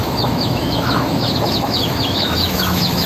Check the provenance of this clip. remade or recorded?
remade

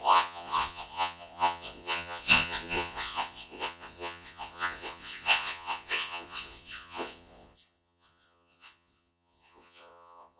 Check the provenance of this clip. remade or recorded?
remade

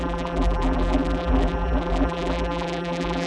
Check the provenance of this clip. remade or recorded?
remade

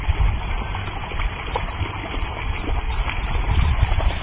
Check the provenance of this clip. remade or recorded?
recorded